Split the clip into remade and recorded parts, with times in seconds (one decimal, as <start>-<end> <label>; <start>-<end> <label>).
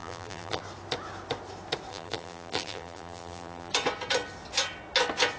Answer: 0.0-0.6 remade; 0.6-1.9 recorded; 1.9-3.7 remade; 3.7-5.4 recorded